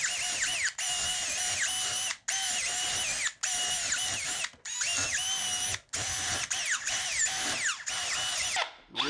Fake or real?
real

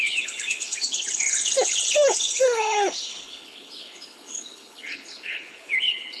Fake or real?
fake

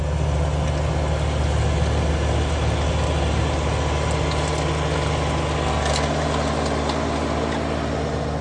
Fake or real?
real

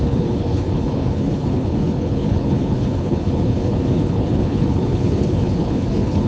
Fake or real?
fake